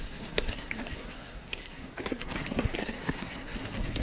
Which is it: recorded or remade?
remade